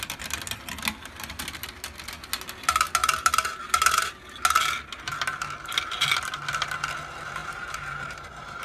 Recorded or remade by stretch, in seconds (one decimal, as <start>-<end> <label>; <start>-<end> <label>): 0.0-7.4 recorded; 7.4-8.6 remade